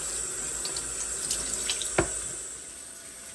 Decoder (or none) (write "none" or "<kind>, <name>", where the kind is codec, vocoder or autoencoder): none